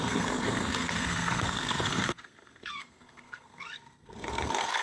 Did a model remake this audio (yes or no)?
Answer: yes